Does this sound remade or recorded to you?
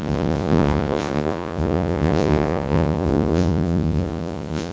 remade